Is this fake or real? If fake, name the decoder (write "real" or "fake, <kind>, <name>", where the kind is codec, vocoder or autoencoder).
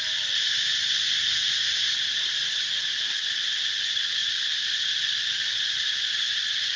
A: real